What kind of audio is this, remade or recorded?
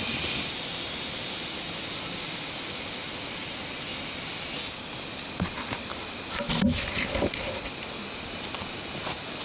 recorded